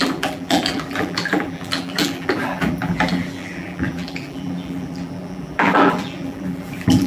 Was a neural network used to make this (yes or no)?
yes